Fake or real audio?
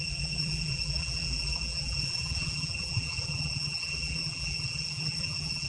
fake